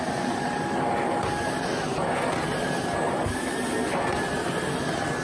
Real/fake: real